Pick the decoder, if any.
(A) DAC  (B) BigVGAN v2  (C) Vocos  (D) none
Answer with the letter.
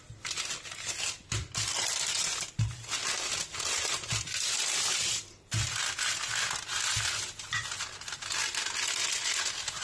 D